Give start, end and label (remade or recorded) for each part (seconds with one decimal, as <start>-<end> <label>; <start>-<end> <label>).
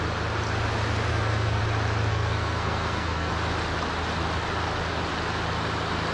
0.0-1.1 recorded; 1.1-1.6 remade; 1.6-2.1 recorded; 2.1-3.3 remade; 3.3-6.1 recorded